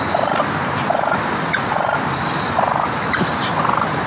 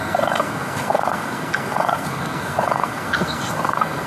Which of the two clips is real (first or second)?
first